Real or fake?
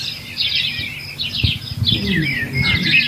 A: real